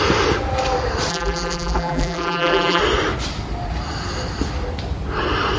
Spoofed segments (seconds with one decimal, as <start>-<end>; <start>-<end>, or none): 1.1-2.8